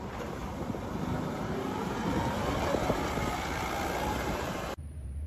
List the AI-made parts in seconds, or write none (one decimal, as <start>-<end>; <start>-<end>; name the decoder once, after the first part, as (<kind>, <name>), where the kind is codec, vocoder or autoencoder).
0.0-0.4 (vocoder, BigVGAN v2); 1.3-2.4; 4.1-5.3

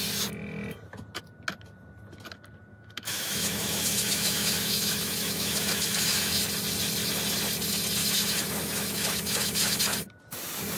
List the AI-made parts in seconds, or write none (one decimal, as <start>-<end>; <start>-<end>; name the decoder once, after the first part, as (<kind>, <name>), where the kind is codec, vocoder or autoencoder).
2.7-6.4 (autoencoder, DAC-VAE); 8.0-9.8

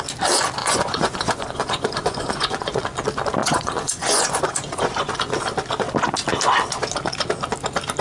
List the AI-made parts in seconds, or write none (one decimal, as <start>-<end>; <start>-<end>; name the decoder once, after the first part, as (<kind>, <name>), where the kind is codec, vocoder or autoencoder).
0.6-2.8 (vocoder, Vocos); 3.4-5.1

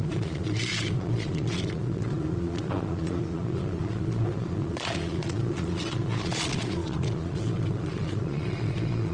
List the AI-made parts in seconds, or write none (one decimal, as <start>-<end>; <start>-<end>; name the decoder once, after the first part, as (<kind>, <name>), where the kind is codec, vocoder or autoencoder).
0.0-9.1 (vocoder, Vocos)

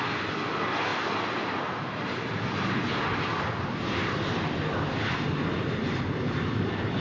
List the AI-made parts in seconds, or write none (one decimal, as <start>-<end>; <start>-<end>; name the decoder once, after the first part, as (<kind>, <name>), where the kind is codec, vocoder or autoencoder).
none

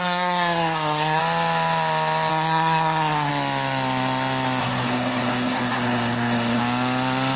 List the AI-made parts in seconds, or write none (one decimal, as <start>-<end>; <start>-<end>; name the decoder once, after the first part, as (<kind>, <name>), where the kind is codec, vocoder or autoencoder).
0.0-1.2 (codec, SNAC); 2.3-3.3; 4.6-6.6

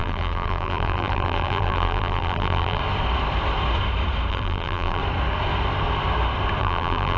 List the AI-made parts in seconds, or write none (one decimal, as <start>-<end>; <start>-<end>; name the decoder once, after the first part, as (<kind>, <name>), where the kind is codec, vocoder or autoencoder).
0.0-2.8 (vocoder, BigVGAN v2); 4.3-5.0; 6.6-7.2

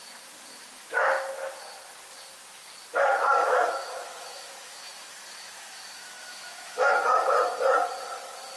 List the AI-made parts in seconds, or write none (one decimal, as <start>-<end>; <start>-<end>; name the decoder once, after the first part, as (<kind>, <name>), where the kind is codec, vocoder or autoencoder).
0.7-1.3 (autoencoder, DAC-VAE); 3.4-6.9